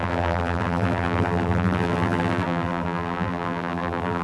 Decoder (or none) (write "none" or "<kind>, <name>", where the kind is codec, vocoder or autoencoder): vocoder, BigVGAN v2